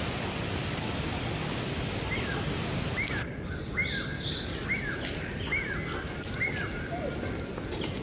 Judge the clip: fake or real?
real